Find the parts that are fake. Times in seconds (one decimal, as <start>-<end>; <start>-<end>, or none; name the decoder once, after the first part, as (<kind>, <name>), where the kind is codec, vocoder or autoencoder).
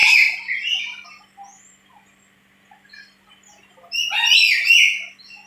0.0-0.8 (vocoder, BigVGAN v2)